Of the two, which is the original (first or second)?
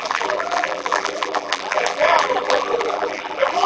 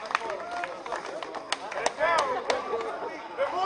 second